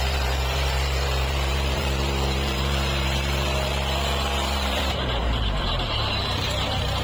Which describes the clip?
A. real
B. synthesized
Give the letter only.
B